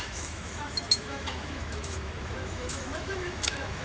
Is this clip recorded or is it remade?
remade